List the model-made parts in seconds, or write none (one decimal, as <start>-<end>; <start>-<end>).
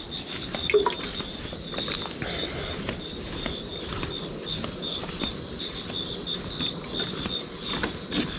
none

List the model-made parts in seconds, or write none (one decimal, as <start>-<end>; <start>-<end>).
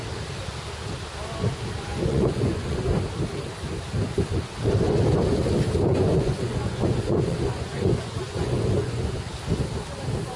1.9-2.8; 5.9-9.3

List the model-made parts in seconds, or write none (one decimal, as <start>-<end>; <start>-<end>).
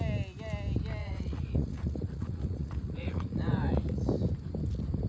1.0-4.1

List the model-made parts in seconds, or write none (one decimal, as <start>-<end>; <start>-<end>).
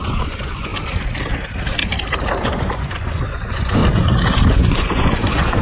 0.0-0.7; 2.4-3.8; 4.5-5.6